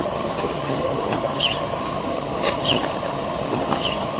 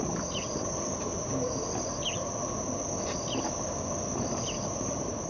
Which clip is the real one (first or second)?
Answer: second